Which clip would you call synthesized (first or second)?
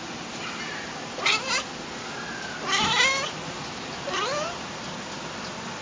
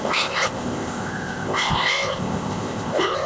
second